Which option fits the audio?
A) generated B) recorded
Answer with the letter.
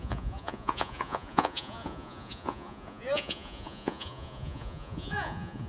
A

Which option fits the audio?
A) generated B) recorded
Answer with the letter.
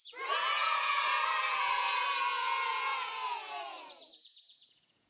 A